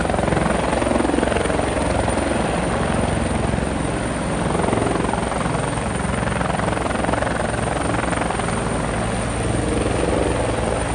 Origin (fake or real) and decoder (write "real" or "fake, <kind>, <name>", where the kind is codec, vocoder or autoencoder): real